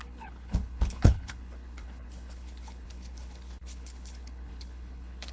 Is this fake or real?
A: fake